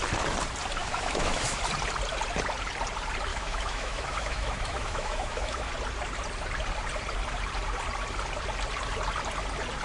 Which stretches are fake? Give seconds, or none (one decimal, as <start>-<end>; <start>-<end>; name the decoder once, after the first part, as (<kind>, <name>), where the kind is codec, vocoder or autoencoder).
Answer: 0.8-1.6 (autoencoder, DAC-VAE); 3.3-5.7